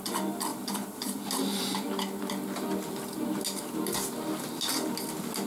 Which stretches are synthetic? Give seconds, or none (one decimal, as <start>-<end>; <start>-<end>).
0.5-1.6